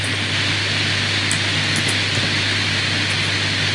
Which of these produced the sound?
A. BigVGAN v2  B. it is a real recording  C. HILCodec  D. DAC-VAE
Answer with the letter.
B